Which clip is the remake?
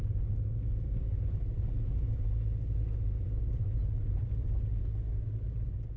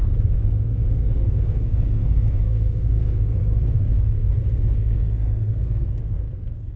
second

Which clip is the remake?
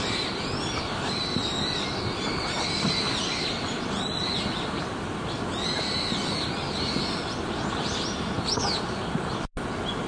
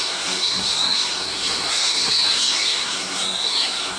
second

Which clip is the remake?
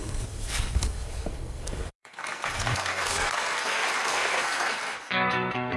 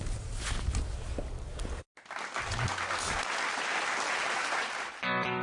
first